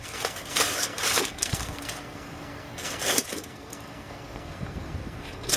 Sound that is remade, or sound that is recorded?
remade